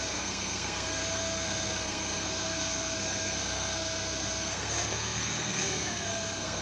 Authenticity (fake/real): fake